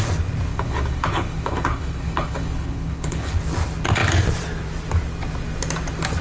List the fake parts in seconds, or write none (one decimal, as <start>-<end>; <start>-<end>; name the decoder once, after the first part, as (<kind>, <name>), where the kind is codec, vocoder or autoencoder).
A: 0.5-3.4 (codec, HILCodec)